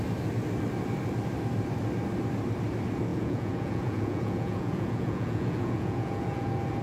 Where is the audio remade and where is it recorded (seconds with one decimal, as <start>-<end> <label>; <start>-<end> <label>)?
0.0-3.1 recorded; 3.1-6.8 remade